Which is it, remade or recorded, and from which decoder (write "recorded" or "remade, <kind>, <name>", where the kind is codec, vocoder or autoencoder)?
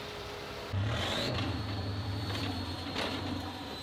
remade, vocoder, BigVGAN v2